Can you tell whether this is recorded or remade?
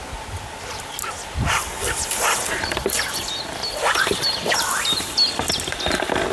recorded